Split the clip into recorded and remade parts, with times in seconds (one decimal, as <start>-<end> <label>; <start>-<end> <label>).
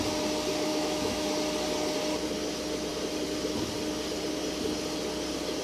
0.0-0.7 recorded; 0.7-1.3 remade; 1.3-5.6 recorded